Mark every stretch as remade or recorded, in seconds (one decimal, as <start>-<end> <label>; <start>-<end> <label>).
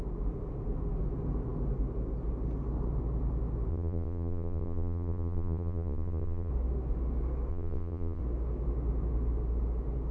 0.0-3.7 recorded; 3.7-6.5 remade; 6.5-7.5 recorded; 7.5-8.2 remade; 8.2-10.1 recorded